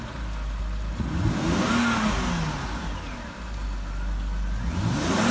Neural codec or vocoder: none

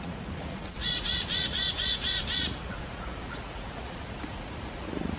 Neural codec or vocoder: vocoder, Vocos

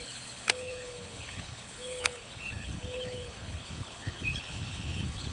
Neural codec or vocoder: codec, HILCodec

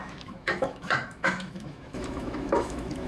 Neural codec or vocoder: autoencoder, DAC-VAE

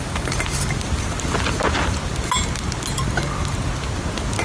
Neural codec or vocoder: none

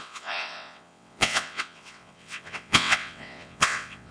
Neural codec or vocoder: vocoder, WaveNeXt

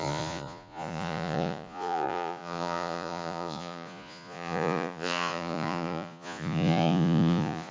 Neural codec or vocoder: vocoder, Vocos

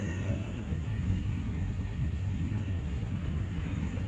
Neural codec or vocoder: codec, SNAC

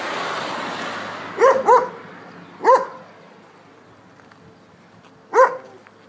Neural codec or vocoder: none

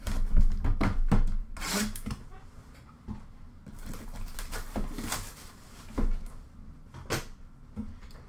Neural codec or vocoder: none